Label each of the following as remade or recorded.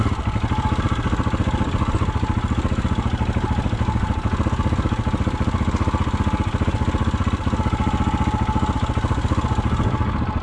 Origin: recorded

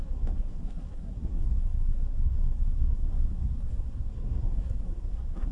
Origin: remade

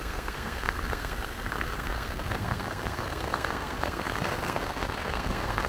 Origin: remade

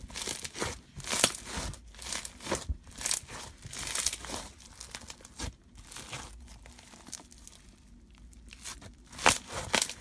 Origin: recorded